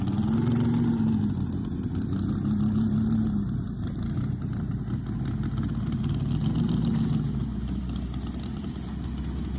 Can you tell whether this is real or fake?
real